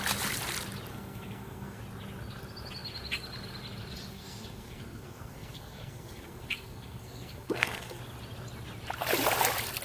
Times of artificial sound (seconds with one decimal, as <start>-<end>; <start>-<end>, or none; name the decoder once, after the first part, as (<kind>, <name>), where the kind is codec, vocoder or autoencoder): 0.9-1.8 (codec, SNAC); 4.1-8.0